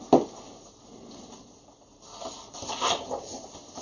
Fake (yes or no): no